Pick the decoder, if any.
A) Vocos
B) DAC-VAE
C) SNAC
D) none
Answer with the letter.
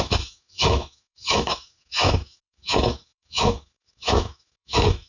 B